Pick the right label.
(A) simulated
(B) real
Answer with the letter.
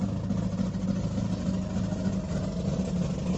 B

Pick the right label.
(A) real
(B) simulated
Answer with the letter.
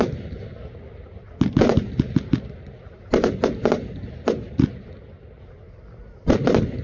A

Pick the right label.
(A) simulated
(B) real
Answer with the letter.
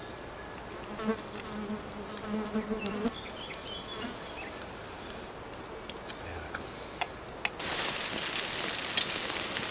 B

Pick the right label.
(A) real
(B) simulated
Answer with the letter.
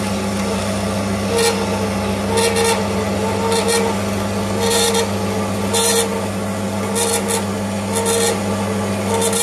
A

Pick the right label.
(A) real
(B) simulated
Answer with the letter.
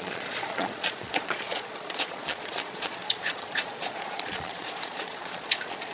B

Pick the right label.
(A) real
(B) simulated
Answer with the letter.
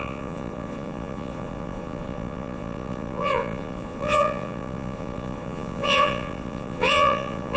B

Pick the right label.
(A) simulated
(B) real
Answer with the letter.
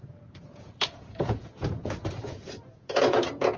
A